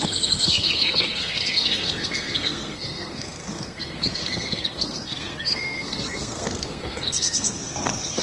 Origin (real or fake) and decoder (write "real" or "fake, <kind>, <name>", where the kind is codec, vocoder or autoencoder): fake, codec, SNAC